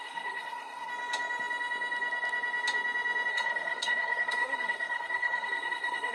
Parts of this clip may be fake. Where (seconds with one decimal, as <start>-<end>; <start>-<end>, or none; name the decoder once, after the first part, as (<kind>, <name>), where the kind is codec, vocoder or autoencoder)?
0.0-0.9 (codec, SNAC); 3.3-6.1